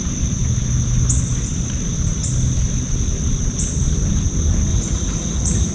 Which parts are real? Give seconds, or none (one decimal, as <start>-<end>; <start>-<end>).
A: 0.0-4.7